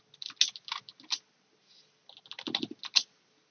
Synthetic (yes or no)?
no